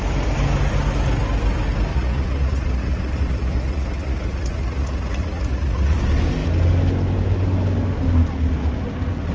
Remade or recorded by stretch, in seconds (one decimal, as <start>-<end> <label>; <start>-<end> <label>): 0.0-1.9 recorded; 1.9-6.0 remade; 6.0-9.3 recorded